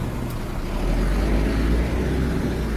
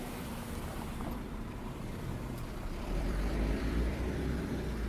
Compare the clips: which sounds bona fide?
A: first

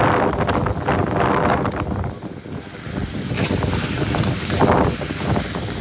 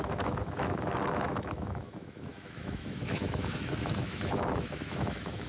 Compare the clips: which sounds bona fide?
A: first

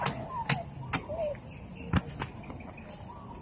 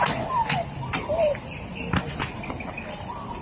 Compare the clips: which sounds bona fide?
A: first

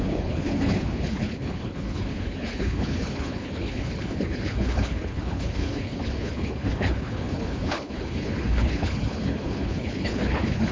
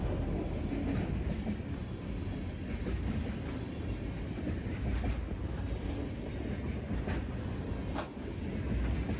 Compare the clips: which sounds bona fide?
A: second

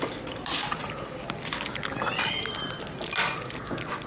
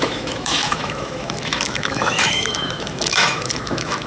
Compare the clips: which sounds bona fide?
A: first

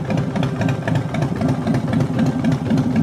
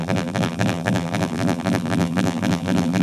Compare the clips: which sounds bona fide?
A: first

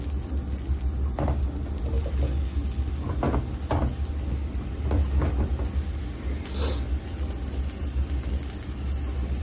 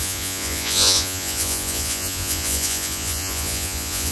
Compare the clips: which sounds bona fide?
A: first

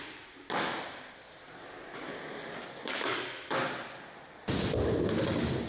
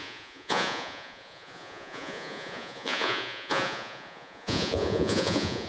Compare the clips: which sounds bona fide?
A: first